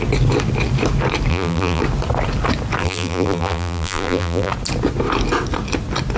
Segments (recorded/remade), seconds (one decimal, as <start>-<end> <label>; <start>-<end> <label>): 0.0-1.3 recorded; 1.3-1.8 remade; 1.8-2.8 recorded; 2.8-4.5 remade; 4.5-6.2 recorded